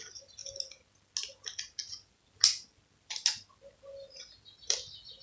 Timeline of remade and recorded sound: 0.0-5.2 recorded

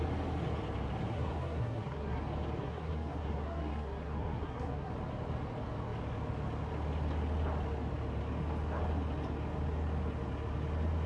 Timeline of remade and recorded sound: 0.0-1.1 recorded; 1.1-2.2 remade; 2.2-2.6 recorded; 2.6-4.9 remade; 4.9-11.1 recorded

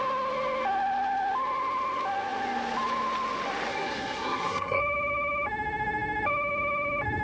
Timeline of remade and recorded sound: 0.0-3.7 recorded; 3.7-4.8 remade; 4.8-7.2 recorded